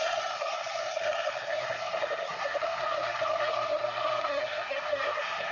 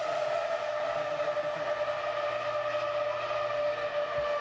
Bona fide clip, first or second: second